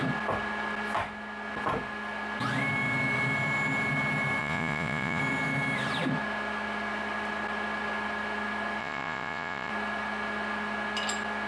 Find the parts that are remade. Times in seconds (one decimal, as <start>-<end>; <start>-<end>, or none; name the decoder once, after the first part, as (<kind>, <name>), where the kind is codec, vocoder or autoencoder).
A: 4.4-5.2 (vocoder, Vocos); 8.8-9.7